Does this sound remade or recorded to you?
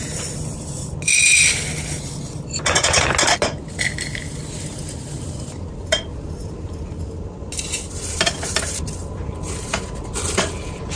recorded